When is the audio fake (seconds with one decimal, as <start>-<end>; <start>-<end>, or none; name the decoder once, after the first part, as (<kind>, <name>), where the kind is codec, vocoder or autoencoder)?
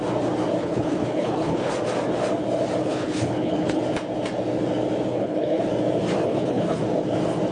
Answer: 0.6-1.7 (codec, HILCodec); 2.8-3.8; 5.1-5.6; 6.2-6.8